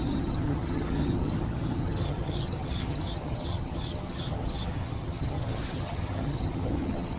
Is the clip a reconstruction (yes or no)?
yes